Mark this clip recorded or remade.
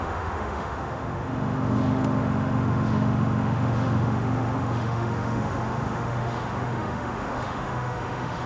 remade